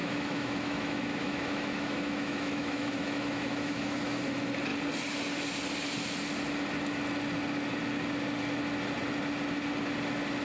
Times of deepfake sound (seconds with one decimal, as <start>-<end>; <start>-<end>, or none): 0.0-4.2